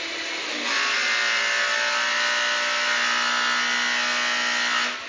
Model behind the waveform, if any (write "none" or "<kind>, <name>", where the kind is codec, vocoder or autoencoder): none